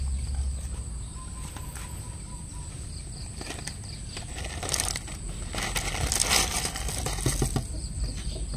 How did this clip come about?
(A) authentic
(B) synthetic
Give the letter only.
A